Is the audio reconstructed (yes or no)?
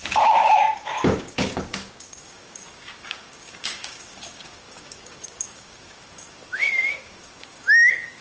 yes